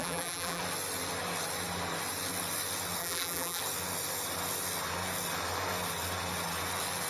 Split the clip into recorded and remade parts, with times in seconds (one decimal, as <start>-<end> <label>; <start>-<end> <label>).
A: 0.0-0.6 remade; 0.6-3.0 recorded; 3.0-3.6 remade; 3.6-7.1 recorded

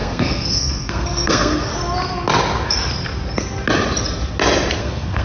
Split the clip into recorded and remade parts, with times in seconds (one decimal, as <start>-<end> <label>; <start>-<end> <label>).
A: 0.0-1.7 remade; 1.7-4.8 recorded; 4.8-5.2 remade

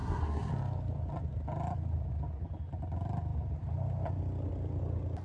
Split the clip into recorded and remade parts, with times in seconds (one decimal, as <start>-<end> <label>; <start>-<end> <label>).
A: 0.0-0.5 remade; 0.5-5.2 recorded

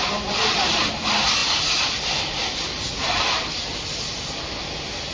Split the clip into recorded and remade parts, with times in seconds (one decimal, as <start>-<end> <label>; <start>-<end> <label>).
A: 0.0-5.1 recorded

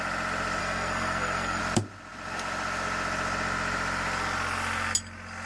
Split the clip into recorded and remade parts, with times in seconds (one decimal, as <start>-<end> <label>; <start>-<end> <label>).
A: 0.0-0.6 recorded; 0.6-1.6 remade; 1.6-5.5 recorded

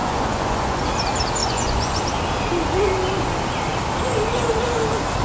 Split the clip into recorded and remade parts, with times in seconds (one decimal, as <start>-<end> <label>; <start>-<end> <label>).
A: 0.0-0.8 remade; 0.8-1.4 recorded; 1.4-2.0 remade; 2.0-5.2 recorded

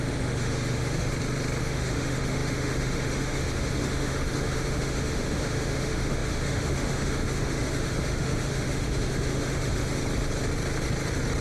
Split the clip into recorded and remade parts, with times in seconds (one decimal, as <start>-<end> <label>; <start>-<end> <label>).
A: 0.0-1.1 remade; 1.1-1.6 recorded; 1.6-10.0 remade; 10.0-11.4 recorded

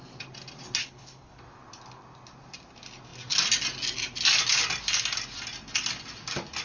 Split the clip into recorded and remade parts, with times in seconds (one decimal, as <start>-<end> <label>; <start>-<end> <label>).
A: 0.0-0.8 recorded; 0.8-1.4 remade; 1.4-6.6 recorded